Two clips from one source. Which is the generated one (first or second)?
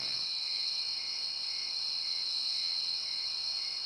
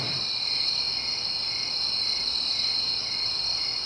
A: first